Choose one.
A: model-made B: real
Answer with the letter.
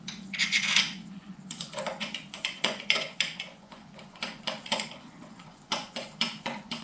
A